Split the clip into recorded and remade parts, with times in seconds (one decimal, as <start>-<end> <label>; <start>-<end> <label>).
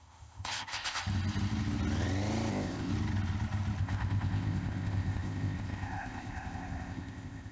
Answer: 0.0-1.0 remade; 1.0-2.5 recorded; 2.5-2.9 remade; 2.9-3.8 recorded; 3.8-7.5 remade